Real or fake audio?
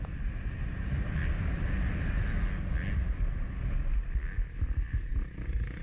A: real